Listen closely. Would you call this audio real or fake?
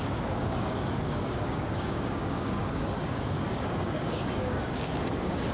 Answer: fake